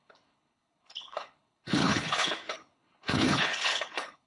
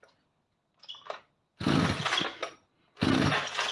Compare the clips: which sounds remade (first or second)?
first